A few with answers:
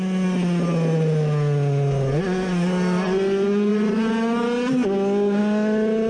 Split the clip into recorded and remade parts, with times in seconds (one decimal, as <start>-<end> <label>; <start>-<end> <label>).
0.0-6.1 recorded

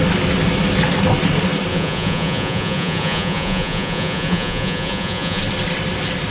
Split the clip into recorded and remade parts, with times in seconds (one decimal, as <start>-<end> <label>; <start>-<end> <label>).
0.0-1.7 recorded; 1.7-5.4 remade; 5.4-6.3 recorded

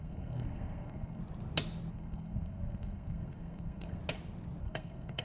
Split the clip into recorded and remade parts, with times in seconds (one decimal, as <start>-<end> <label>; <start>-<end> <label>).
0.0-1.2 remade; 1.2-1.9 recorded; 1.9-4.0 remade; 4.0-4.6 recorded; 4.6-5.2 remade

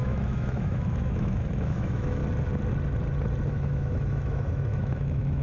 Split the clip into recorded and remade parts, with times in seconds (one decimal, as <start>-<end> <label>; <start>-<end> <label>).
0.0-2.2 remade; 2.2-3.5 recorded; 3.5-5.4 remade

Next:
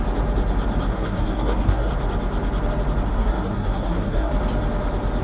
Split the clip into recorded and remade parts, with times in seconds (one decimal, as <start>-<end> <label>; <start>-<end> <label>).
0.0-0.9 recorded; 0.9-1.9 remade; 1.9-3.1 recorded; 3.1-4.3 remade; 4.3-5.2 recorded

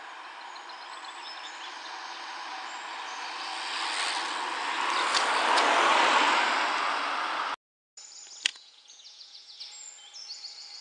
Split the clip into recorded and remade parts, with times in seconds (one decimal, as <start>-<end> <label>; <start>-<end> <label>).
0.0-8.5 recorded; 8.5-9.6 remade; 9.6-10.8 recorded

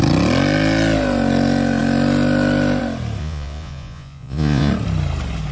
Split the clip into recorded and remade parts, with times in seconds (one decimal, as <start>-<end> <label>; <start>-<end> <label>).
0.0-3.2 recorded; 3.2-4.7 remade; 4.7-5.5 recorded